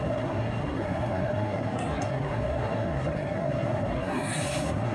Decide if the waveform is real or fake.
fake